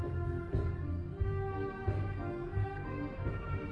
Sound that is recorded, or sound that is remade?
remade